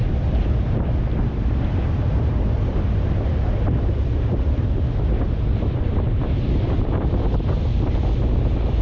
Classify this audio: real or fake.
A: fake